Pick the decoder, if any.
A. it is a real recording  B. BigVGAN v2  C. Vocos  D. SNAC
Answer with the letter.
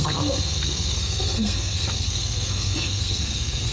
D